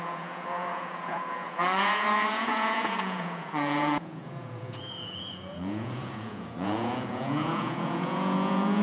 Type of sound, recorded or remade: remade